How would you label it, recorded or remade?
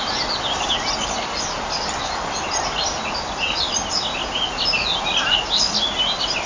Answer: recorded